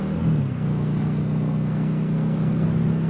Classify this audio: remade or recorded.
remade